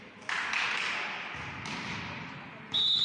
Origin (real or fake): real